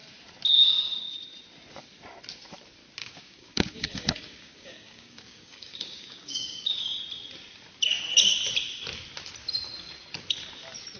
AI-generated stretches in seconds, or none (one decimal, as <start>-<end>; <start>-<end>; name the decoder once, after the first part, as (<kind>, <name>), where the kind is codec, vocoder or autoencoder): 3.0-7.0 (codec, DAC)